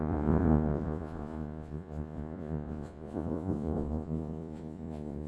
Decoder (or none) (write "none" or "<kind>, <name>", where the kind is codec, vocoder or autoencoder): vocoder, Vocos